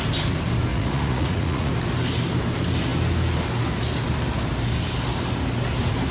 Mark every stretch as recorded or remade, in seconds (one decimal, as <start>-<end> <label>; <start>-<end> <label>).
0.0-0.7 recorded; 0.7-1.7 remade; 1.7-6.1 recorded